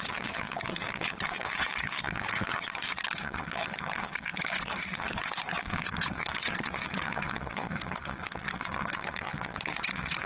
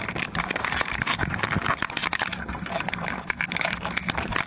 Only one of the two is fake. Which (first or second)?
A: first